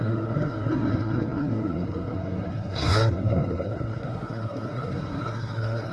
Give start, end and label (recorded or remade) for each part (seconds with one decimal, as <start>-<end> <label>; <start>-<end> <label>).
0.0-5.9 remade

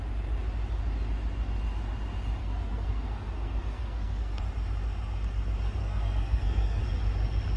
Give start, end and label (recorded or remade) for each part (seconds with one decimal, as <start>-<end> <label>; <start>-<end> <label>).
0.0-2.4 recorded; 2.4-4.4 remade; 4.4-5.8 recorded; 5.8-6.8 remade; 6.8-7.6 recorded